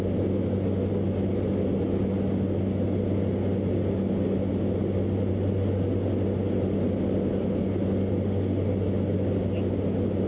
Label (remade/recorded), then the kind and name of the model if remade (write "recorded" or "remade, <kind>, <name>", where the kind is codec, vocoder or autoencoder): recorded